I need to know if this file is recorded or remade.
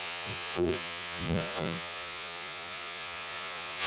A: remade